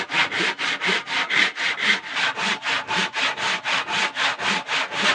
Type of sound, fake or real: real